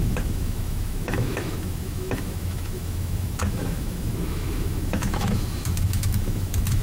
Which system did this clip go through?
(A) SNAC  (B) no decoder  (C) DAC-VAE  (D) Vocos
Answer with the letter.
C